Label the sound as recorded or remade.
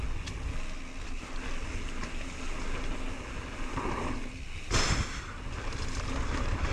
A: recorded